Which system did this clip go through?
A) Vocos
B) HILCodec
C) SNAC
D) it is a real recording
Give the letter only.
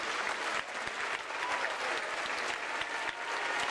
D